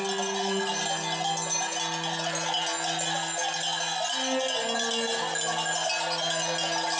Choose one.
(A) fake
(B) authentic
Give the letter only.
B